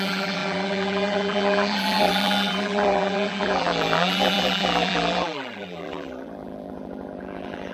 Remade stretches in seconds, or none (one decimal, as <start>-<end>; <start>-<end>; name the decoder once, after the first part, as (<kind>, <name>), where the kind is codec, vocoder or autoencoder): 0.0-7.7 (vocoder, BigVGAN v2)